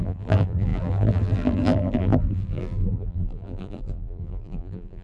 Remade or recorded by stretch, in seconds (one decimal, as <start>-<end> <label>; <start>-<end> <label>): 0.0-5.0 remade